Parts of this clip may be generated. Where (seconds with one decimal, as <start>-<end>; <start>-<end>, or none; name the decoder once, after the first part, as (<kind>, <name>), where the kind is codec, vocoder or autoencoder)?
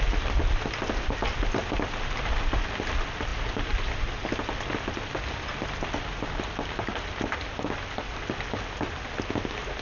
none